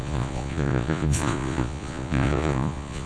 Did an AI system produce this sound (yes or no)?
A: yes